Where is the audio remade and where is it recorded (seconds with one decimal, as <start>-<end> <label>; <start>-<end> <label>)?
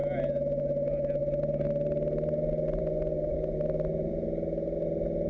0.0-5.3 recorded